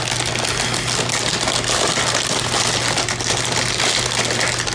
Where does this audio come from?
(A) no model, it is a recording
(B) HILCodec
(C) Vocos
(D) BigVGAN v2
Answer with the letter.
A